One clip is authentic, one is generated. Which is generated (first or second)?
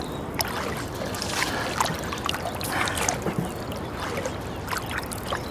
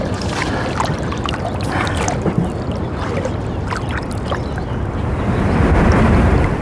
second